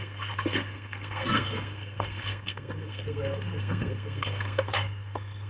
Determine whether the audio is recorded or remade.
remade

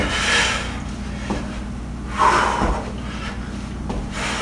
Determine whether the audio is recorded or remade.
recorded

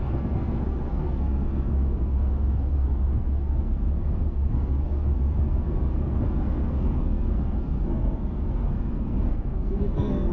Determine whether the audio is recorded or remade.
remade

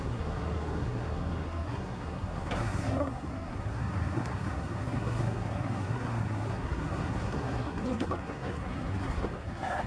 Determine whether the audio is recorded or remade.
remade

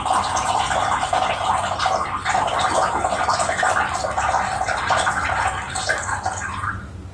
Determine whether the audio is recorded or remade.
recorded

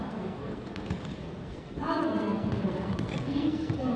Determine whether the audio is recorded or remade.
remade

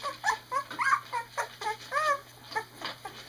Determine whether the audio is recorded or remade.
recorded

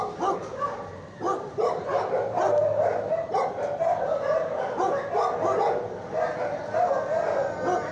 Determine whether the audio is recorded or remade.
recorded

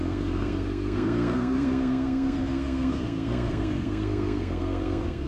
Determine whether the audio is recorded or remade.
remade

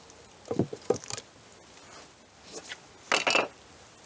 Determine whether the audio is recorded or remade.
recorded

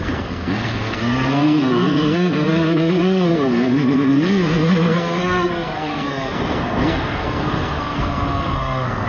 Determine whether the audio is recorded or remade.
remade